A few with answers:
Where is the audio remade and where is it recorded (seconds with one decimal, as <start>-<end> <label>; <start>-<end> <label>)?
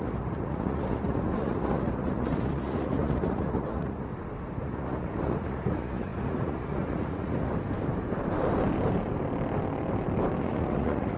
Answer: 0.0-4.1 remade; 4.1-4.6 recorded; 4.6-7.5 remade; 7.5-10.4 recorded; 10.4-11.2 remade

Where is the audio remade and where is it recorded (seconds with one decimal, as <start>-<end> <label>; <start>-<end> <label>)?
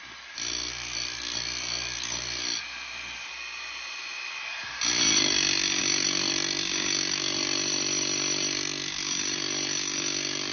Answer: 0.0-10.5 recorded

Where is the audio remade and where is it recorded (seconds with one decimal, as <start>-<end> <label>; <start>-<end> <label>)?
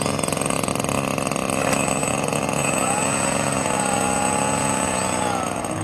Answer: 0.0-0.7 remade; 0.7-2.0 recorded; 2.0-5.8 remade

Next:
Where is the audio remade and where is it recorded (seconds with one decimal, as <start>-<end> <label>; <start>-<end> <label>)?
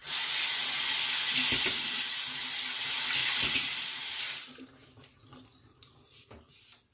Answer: 0.0-3.2 recorded; 3.2-4.5 remade; 4.5-6.9 recorded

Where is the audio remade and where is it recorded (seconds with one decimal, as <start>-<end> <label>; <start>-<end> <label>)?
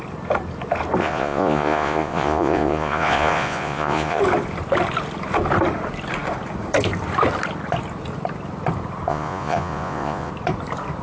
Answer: 0.0-1.0 recorded; 1.0-4.2 remade; 4.2-9.1 recorded; 9.1-10.3 remade; 10.3-11.0 recorded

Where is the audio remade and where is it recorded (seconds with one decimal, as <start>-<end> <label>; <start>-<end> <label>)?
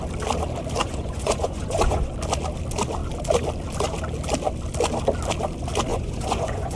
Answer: 0.0-0.8 recorded; 0.8-2.1 remade; 2.1-5.9 recorded; 5.9-6.8 remade